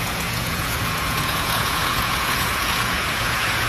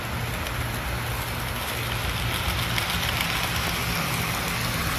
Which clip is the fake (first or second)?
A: first